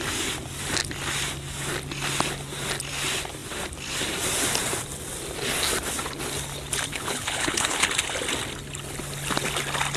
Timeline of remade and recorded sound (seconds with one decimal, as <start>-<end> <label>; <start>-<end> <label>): 0.0-6.9 recorded; 6.9-7.9 remade; 7.9-10.0 recorded